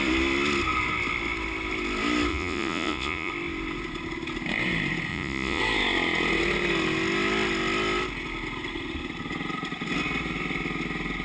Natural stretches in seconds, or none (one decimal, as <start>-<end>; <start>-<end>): 0.0-2.3; 3.3-5.1; 5.6-11.2